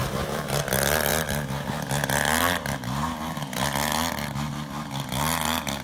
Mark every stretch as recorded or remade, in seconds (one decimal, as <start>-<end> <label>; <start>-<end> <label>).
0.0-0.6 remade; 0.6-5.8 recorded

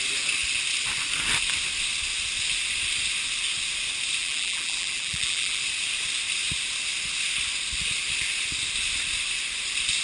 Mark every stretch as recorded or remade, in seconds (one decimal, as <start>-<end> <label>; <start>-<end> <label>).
0.0-4.2 recorded; 4.2-5.6 remade; 5.6-10.0 recorded

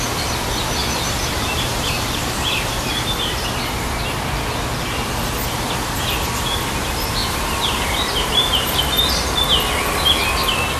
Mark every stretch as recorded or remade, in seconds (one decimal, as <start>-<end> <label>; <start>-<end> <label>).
0.0-0.8 recorded; 0.8-3.5 remade; 3.5-7.2 recorded; 7.2-8.8 remade; 8.8-10.8 recorded

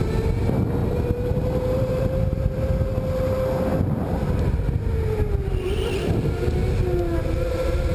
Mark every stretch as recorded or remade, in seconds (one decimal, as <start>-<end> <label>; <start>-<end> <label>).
0.0-0.8 recorded; 0.8-2.9 remade; 2.9-7.9 recorded

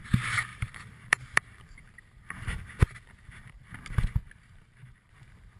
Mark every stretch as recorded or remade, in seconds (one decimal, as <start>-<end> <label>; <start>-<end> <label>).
0.0-0.5 recorded; 0.5-3.5 remade; 3.5-4.2 recorded; 4.2-5.1 remade; 5.1-5.6 recorded

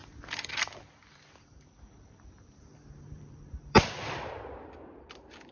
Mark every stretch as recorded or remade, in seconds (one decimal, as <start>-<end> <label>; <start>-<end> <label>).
0.0-0.5 remade; 0.5-1.0 recorded; 1.0-4.3 remade; 4.3-5.5 recorded